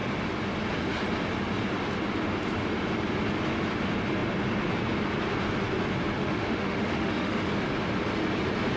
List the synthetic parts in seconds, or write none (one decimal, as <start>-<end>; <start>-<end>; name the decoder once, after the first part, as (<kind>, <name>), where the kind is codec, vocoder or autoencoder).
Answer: 6.2-7.5 (autoencoder, DAC-VAE)